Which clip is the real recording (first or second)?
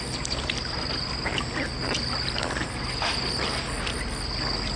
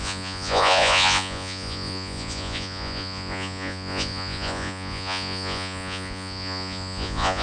first